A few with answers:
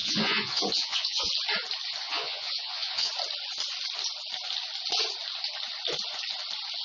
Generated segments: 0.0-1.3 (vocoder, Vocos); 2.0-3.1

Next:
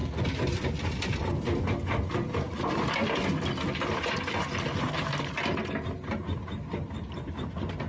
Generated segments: none

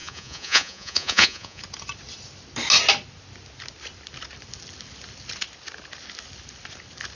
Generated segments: 0.0-1.6 (vocoder, Vocos)

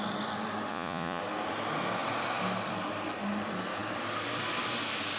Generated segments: 0.7-1.2 (vocoder, Vocos)

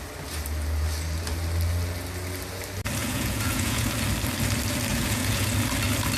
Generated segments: 3.0-3.9 (vocoder, Vocos); 4.9-5.5